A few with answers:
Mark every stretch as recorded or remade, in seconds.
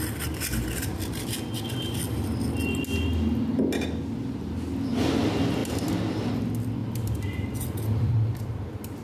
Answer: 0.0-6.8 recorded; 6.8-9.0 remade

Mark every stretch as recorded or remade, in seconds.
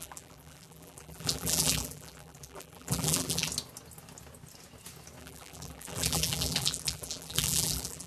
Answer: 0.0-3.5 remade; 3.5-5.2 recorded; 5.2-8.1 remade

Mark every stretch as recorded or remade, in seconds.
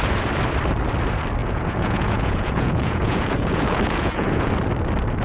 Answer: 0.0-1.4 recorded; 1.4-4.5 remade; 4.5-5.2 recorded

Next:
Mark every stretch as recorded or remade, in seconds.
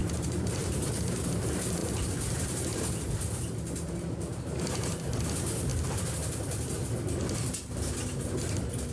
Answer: 0.0-0.9 remade; 0.9-1.8 recorded; 1.8-2.8 remade; 2.8-8.9 recorded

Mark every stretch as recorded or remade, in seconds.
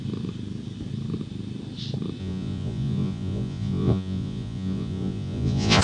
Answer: 0.0-2.2 recorded; 2.2-5.8 remade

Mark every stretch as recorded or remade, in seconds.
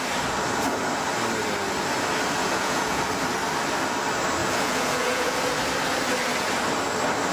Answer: 0.0-2.4 recorded; 2.4-3.0 remade; 3.0-4.4 recorded; 4.4-5.4 remade; 5.4-7.3 recorded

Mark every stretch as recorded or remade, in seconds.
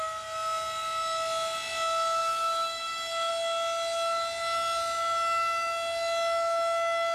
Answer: 0.0-2.2 recorded; 2.2-3.3 remade; 3.3-7.1 recorded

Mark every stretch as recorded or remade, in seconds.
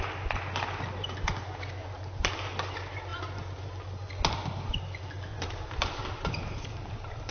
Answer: 0.0-5.3 recorded; 5.3-7.3 remade